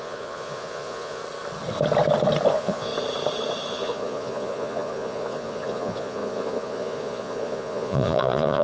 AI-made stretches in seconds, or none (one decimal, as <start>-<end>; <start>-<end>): 0.0-1.2; 2.5-2.9; 3.7-8.6